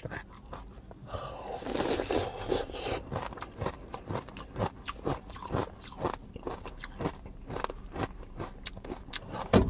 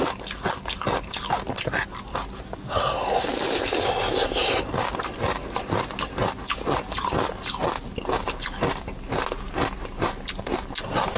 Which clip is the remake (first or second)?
first